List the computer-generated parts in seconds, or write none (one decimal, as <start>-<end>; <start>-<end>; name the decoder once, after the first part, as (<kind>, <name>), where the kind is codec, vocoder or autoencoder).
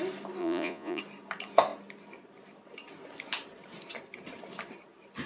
0.4-1.0 (vocoder, Vocos)